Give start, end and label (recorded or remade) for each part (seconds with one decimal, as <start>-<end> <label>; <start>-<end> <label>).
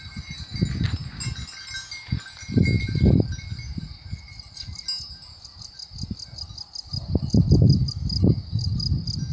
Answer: 0.0-9.3 recorded